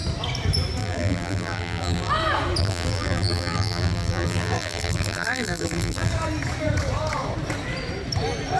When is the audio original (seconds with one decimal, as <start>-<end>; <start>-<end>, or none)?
0.0-0.8; 2.1-2.6; 6.1-8.6